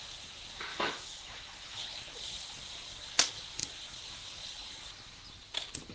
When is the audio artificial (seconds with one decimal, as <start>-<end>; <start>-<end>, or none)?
0.7-1.8